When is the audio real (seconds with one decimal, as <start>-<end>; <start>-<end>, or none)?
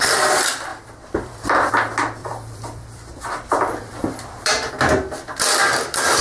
0.0-0.7; 1.7-2.2; 4.7-6.2